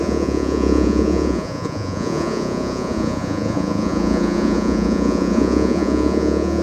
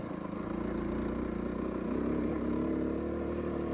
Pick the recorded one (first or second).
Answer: second